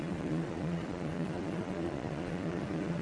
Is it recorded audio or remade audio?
remade